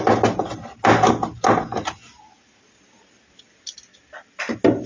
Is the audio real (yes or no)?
yes